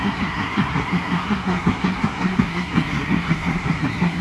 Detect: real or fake fake